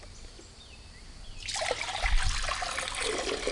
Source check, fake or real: real